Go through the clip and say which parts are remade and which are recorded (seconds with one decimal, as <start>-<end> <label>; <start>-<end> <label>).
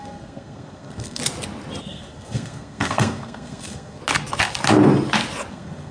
0.0-1.2 remade; 1.2-1.8 recorded; 1.8-4.0 remade; 4.0-5.5 recorded; 5.5-5.9 remade